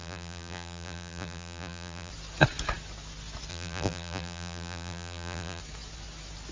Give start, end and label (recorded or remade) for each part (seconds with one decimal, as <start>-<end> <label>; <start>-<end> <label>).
0.0-2.1 remade; 2.1-3.5 recorded; 3.5-5.6 remade; 5.6-6.5 recorded